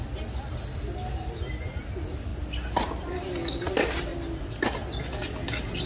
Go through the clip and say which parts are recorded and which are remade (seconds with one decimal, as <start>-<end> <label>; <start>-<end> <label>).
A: 0.0-5.9 recorded